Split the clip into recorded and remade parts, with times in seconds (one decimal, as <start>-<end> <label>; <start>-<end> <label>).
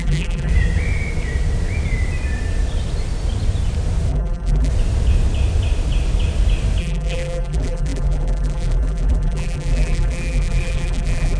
0.0-0.5 remade; 0.5-4.1 recorded; 4.1-4.7 remade; 4.7-6.8 recorded; 6.8-11.4 remade